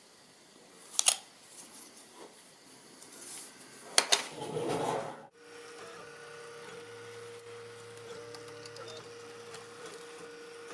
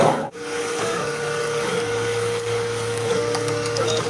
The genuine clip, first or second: first